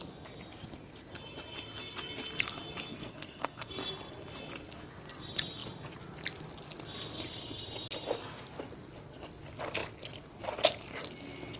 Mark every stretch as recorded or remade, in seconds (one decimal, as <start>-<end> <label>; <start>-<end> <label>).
0.0-2.9 recorded; 2.9-3.7 remade; 3.7-11.6 recorded